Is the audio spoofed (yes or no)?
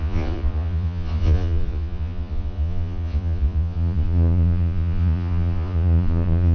yes